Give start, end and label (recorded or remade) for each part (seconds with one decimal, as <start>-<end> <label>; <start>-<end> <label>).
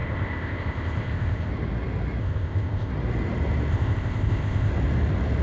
0.0-1.5 remade; 1.5-2.2 recorded; 2.2-2.9 remade; 2.9-3.7 recorded; 3.7-4.7 remade; 4.7-5.4 recorded